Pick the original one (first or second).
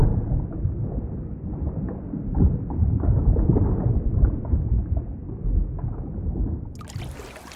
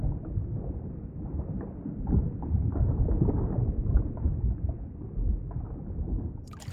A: first